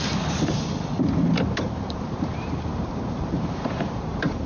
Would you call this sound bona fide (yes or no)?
no